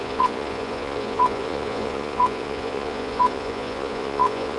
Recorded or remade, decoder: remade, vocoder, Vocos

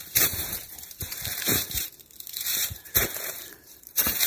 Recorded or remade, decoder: remade, vocoder, BigVGAN v2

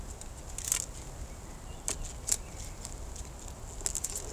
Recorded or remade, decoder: recorded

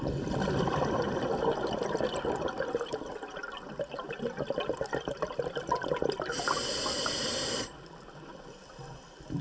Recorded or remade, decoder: recorded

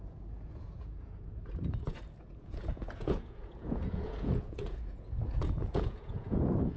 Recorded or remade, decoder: remade, vocoder, Vocos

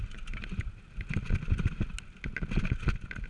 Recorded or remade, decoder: recorded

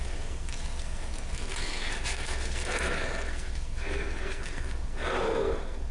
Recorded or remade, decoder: remade, codec, SNAC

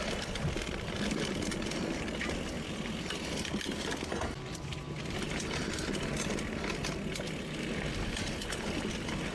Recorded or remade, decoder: recorded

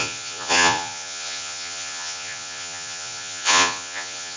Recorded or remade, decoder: remade, vocoder, Vocos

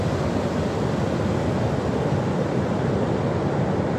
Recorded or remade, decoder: recorded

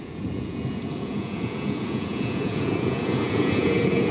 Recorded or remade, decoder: remade, vocoder, Vocos